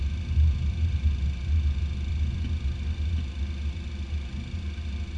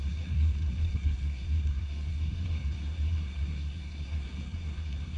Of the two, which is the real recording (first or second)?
first